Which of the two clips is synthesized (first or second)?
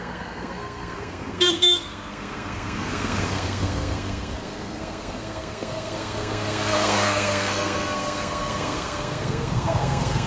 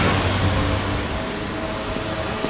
first